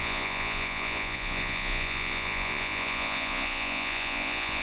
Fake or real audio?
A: fake